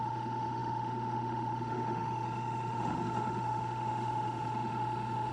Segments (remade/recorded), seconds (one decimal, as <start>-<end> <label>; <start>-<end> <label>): 0.0-5.3 remade